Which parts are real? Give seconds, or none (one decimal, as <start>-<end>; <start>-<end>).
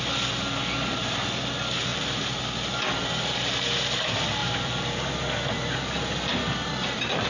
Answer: 0.0-1.9; 2.4-4.4